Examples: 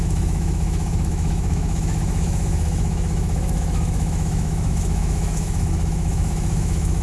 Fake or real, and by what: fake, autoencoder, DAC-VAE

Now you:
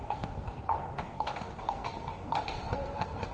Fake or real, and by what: fake, codec, SNAC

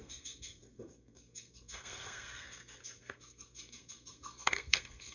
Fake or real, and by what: fake, codec, SNAC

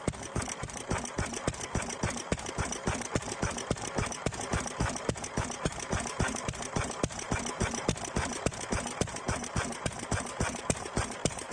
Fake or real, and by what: real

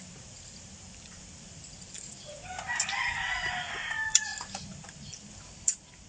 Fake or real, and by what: fake, vocoder, BigVGAN v2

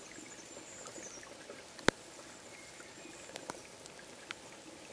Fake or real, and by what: real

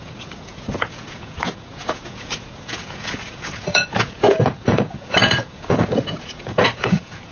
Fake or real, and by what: fake, vocoder, Vocos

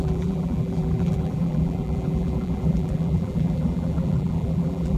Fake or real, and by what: fake, vocoder, BigVGAN v2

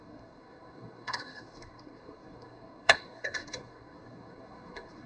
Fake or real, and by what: fake, codec, SNAC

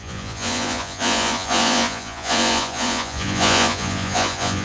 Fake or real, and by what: fake, vocoder, Vocos